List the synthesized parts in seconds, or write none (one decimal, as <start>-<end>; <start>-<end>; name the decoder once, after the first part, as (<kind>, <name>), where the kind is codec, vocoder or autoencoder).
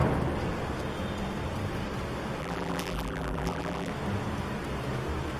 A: 2.4-3.9 (vocoder, BigVGAN v2)